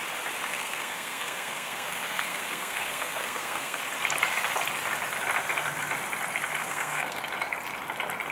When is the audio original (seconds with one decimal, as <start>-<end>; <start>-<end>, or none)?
0.0-0.5; 3.8-6.6; 7.2-8.3